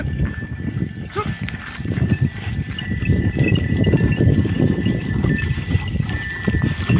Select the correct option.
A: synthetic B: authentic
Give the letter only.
B